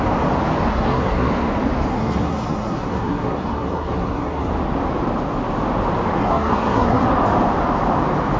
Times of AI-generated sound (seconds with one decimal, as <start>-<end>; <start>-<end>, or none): 0.7-1.3; 1.9-4.5; 6.2-7.0